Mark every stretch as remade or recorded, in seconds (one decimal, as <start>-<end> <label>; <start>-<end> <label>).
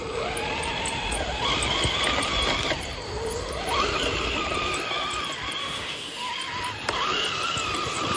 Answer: 0.0-5.6 recorded; 5.6-6.3 remade; 6.3-8.2 recorded